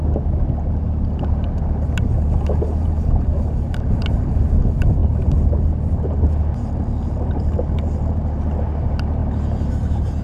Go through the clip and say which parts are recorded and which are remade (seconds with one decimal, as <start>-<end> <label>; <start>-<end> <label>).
0.0-10.2 recorded